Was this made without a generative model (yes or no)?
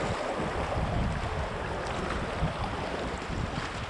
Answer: yes